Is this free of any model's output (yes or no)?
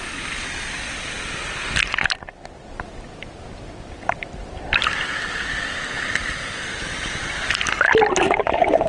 yes